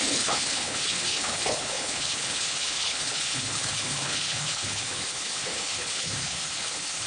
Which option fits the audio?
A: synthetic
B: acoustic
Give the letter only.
A